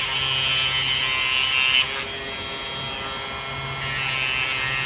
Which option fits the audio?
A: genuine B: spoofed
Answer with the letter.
A